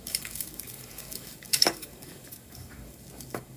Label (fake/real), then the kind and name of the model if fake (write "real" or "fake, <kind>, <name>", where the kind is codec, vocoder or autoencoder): fake, codec, DAC